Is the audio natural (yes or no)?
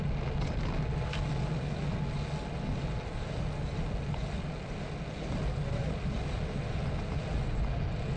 yes